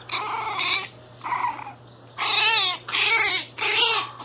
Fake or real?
real